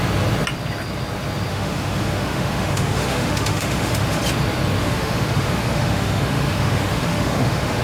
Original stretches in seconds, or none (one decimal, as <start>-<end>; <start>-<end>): 0.0-1.5; 4.2-4.8